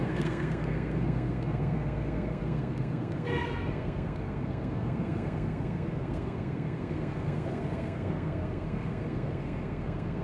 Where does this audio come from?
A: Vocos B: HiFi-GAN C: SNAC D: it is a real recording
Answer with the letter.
C